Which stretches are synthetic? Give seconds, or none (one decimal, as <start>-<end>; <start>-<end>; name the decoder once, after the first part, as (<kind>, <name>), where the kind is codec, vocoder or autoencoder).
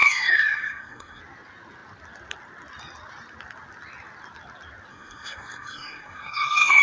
0.0-1.2 (codec, SNAC); 4.9-6.8